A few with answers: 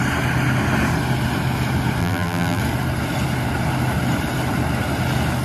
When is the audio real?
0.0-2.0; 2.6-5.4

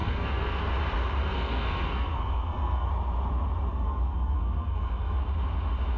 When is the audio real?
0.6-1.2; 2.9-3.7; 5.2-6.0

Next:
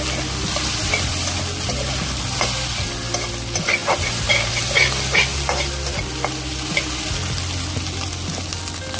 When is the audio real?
0.0-9.0

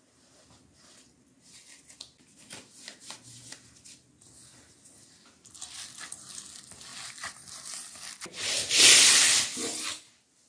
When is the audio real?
0.0-10.5

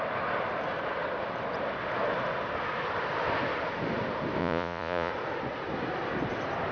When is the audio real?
0.0-4.4; 5.1-6.7

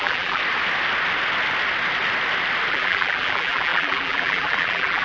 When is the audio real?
0.4-2.7